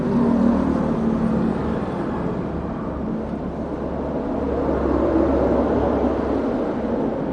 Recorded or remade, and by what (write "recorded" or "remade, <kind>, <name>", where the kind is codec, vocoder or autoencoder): recorded